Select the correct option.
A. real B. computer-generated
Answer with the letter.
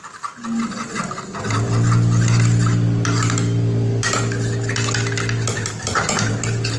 A